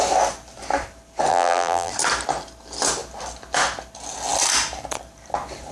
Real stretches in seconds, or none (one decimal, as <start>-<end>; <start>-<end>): 0.0-1.3; 1.9-5.7